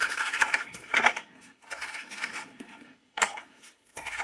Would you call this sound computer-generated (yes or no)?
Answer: yes